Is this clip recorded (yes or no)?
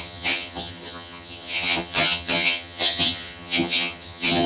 no